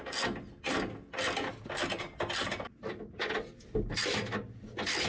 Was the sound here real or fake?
real